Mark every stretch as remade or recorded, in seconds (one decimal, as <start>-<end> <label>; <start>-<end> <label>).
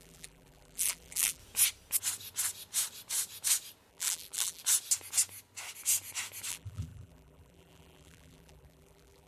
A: 0.0-1.4 remade; 1.4-3.9 recorded; 3.9-4.6 remade; 4.6-6.5 recorded; 6.5-9.3 remade